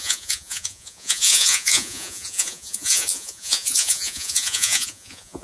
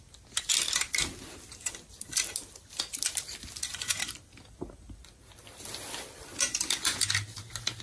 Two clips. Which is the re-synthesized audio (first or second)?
first